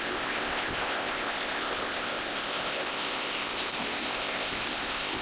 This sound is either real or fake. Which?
fake